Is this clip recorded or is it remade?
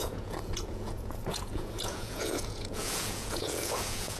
remade